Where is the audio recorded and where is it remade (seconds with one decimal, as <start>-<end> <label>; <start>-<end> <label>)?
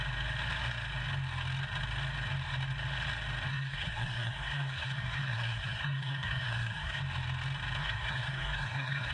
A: 0.0-3.5 recorded; 3.5-7.0 remade; 7.0-7.8 recorded; 7.8-9.1 remade